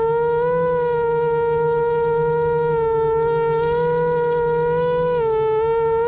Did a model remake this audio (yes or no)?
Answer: yes